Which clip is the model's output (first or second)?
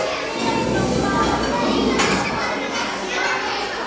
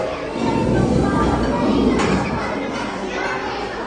second